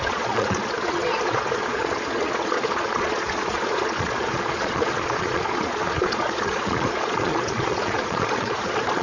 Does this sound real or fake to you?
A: fake